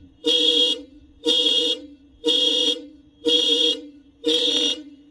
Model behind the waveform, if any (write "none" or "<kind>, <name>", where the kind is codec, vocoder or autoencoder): vocoder, Vocos